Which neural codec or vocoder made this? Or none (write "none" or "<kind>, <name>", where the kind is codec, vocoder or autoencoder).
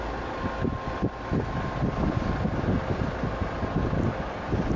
none